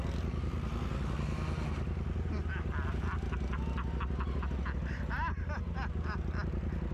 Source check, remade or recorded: recorded